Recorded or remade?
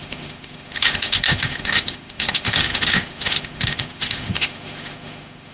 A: remade